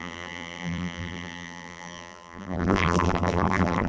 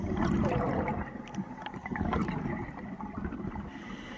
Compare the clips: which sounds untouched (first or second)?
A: second